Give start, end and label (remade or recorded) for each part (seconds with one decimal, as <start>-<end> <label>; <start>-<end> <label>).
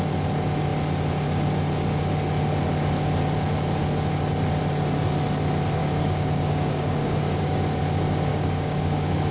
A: 0.0-5.8 recorded; 5.8-7.8 remade; 7.8-8.3 recorded; 8.3-9.3 remade